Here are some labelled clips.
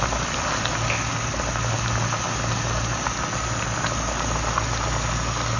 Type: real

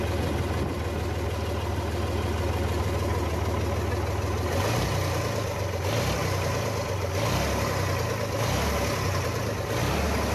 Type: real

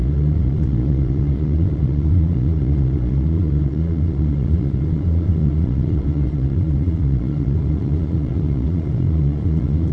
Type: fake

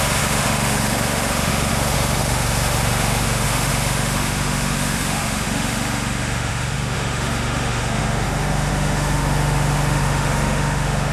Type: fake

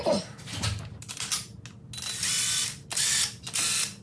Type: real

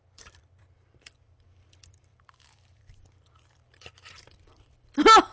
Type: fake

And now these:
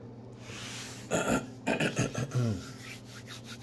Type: real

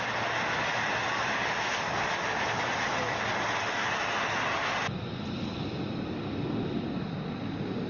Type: real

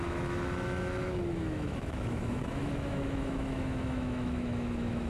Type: fake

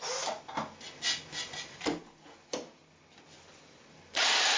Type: real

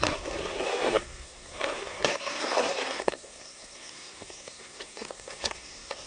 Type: fake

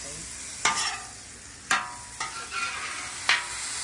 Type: real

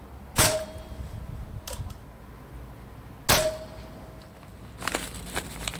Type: real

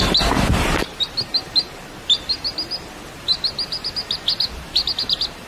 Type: real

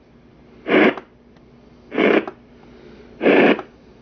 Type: real